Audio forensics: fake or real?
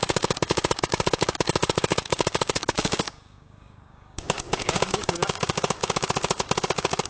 fake